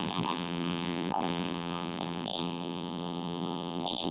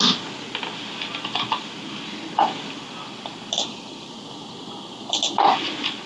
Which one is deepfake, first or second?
first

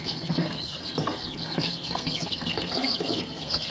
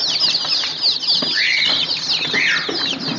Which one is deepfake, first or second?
first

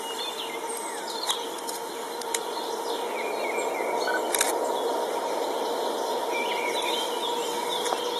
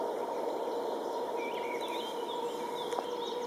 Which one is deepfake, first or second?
first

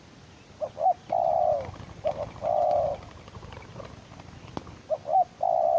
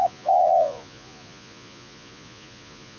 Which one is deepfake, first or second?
second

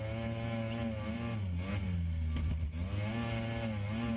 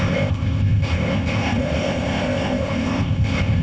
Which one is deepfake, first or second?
second